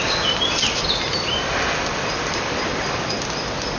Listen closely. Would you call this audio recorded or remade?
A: recorded